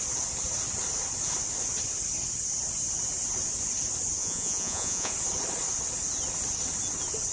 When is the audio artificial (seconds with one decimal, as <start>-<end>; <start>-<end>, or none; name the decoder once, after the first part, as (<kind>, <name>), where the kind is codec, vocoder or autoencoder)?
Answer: 4.2-5.1 (vocoder, Vocos)